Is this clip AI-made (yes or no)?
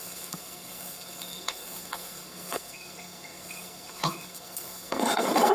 yes